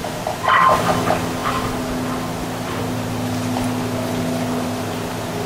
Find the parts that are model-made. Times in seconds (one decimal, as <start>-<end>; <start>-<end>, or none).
0.0-0.8